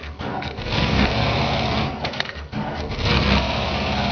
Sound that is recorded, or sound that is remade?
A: remade